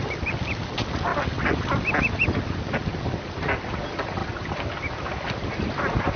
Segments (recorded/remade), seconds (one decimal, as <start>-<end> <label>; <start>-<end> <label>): 0.0-6.2 recorded